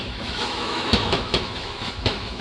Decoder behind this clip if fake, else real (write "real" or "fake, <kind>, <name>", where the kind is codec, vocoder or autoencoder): fake, autoencoder, DAC-VAE